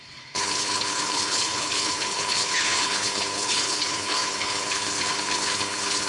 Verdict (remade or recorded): remade